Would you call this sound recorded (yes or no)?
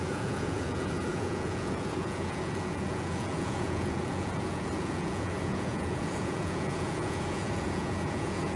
no